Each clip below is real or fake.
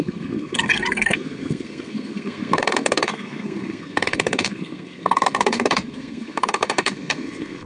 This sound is fake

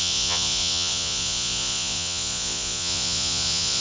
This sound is fake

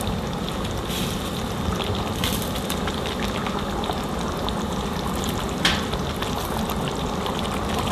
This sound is real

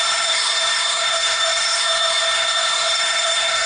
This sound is fake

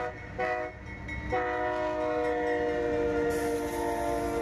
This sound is real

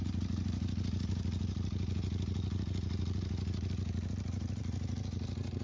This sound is fake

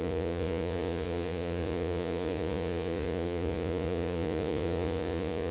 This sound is fake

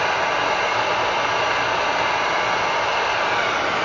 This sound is real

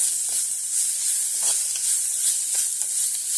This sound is fake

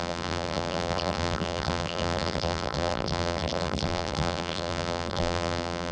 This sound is fake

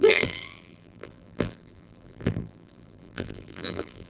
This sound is fake